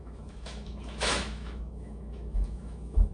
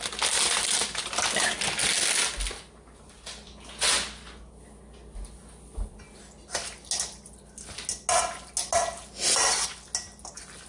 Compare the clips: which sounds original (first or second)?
second